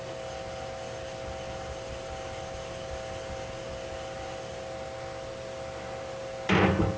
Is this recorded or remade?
recorded